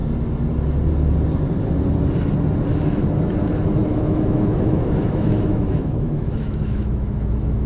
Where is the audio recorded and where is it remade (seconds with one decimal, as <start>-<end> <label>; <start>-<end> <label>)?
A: 0.0-3.8 recorded; 3.8-7.7 remade